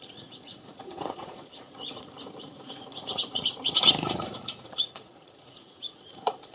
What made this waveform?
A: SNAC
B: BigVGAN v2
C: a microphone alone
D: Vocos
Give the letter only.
D